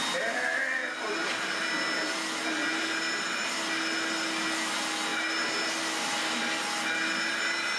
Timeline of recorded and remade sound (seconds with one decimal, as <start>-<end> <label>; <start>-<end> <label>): 0.0-7.8 recorded